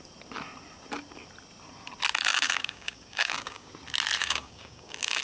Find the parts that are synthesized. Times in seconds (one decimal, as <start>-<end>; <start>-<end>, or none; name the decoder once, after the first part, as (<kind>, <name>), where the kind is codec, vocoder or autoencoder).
2.3-3.7 (codec, DAC); 4.2-5.2